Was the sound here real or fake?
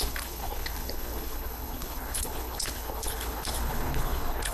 fake